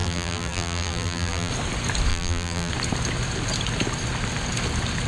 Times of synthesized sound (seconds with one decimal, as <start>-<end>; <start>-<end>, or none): 0.0-1.5; 2.1-2.7